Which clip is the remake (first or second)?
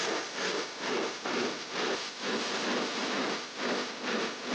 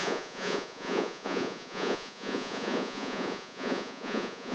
second